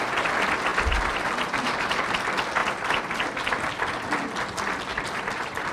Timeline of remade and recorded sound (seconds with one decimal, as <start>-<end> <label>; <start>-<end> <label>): 0.0-0.7 recorded; 0.7-2.1 remade; 2.1-4.9 recorded; 4.9-5.7 remade